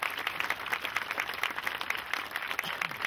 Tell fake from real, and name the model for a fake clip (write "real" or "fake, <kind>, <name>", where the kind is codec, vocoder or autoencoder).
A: real